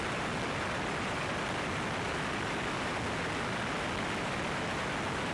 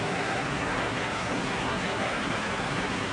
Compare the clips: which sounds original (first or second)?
first